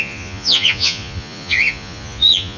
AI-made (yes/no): yes